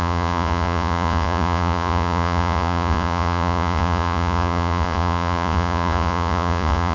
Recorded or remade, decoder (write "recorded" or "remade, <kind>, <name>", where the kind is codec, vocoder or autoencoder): remade, vocoder, Vocos